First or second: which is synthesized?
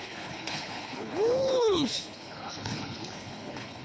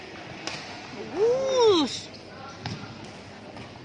first